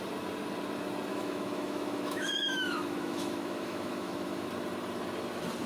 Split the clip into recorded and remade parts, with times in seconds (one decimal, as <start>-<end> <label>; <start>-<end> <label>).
0.0-1.1 recorded; 1.1-4.5 remade; 4.5-5.7 recorded